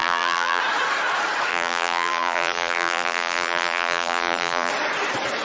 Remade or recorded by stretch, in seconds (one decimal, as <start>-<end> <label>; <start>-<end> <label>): 0.0-0.6 remade; 0.6-1.5 recorded; 1.5-4.7 remade; 4.7-5.4 recorded